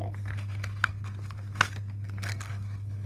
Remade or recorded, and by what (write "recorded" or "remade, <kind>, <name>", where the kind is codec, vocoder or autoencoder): remade, codec, SNAC